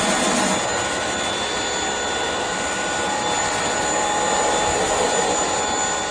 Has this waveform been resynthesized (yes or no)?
yes